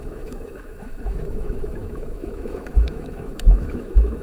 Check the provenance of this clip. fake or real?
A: fake